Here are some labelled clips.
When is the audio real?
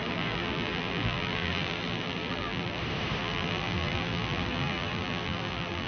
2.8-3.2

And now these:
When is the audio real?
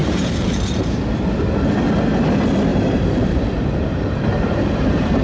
1.0-2.7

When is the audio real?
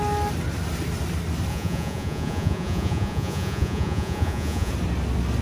0.0-1.5; 4.7-5.4